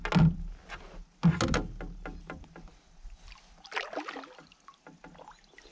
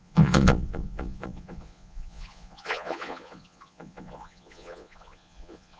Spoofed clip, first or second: second